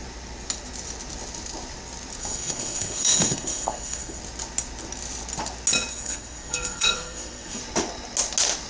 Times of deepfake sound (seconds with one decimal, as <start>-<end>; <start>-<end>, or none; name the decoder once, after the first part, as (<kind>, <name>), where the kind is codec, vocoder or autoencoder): 2.2-4.2 (codec, SNAC); 5.9-7.6

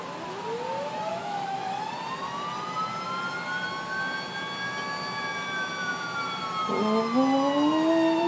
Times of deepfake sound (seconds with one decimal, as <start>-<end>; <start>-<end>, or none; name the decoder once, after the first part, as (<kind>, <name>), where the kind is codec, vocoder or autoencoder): 1.1-1.9 (autoencoder, DAC-VAE)

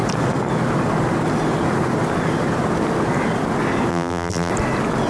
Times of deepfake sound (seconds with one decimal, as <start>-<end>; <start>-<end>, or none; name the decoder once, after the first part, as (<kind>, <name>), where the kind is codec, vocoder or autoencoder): 3.9-4.5 (vocoder, BigVGAN v2)

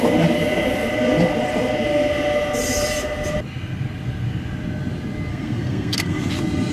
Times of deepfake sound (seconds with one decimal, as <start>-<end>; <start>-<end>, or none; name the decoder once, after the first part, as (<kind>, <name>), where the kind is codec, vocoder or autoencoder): 5.3-6.3 (codec, SNAC)

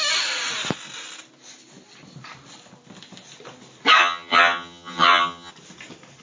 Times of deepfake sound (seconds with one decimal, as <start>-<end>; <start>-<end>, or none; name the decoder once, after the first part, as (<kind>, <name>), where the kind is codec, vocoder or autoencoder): 4.0-5.5 (vocoder, HiFi-GAN)

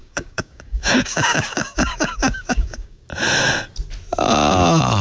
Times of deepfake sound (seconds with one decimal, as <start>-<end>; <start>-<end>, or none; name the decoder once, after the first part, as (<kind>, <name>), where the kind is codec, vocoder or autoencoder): 0.0-3.0 (codec, DAC)

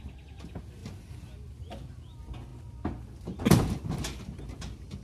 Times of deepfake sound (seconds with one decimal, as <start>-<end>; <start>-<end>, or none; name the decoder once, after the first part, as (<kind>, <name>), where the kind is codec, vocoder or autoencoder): none